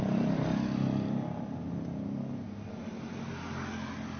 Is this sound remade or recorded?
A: recorded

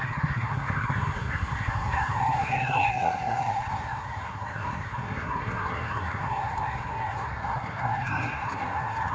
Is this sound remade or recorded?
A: remade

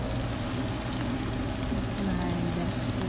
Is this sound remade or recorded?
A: recorded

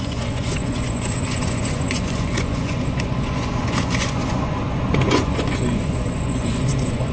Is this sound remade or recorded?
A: remade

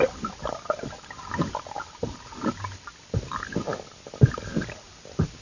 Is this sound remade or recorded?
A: recorded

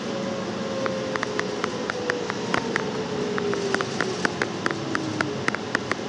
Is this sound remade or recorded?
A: recorded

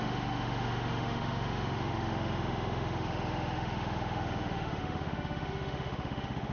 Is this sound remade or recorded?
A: remade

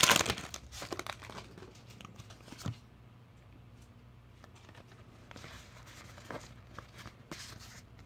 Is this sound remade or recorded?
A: recorded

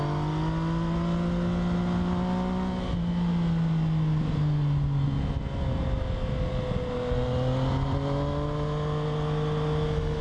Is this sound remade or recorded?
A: recorded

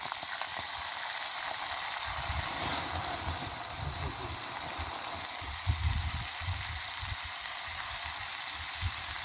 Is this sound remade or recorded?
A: recorded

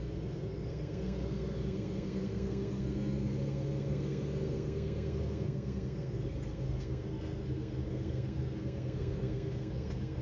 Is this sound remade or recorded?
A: remade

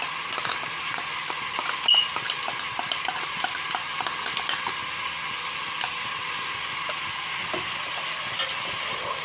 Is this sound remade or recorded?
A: recorded